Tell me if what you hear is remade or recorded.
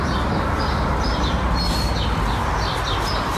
recorded